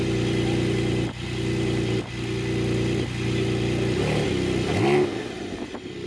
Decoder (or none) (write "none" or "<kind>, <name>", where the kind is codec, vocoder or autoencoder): none